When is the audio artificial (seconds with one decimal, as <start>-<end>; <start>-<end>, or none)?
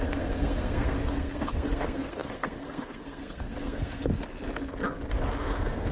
0.0-4.0; 5.4-5.9